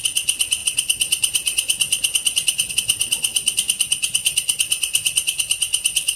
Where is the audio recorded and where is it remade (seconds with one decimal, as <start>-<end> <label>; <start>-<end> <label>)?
0.0-3.3 remade; 3.3-3.9 recorded; 3.9-6.2 remade